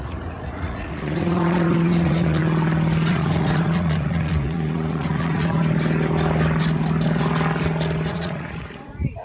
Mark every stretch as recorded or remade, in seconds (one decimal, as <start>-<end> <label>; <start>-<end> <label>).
0.0-2.4 remade; 2.4-3.1 recorded; 3.1-5.6 remade; 5.6-8.1 recorded; 8.1-9.2 remade